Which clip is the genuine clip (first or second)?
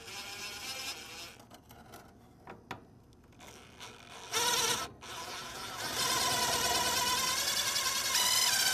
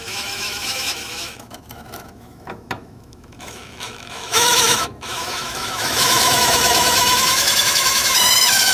first